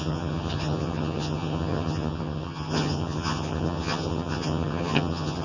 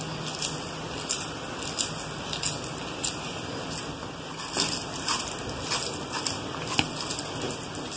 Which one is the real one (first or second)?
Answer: second